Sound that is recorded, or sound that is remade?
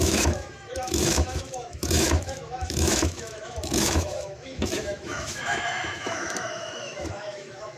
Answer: remade